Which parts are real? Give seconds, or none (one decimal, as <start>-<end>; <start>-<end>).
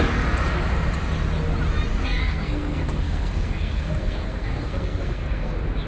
0.0-2.0; 5.5-5.9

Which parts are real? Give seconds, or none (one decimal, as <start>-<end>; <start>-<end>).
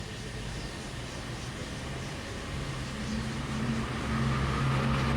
0.0-1.6; 3.7-5.2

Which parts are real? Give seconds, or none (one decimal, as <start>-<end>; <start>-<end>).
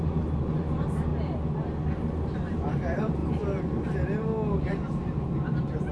1.1-2.0; 3.2-4.7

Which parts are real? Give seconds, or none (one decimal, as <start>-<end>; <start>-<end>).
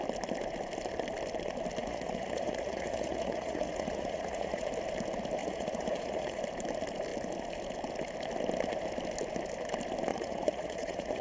0.0-1.8; 4.7-5.4; 6.4-10.1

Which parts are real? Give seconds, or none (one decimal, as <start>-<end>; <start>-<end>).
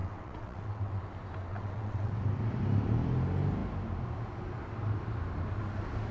1.0-1.5; 2.1-6.1